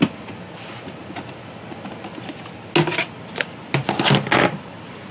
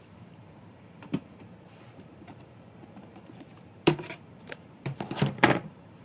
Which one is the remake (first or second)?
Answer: second